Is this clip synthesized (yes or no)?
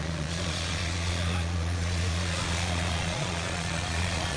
yes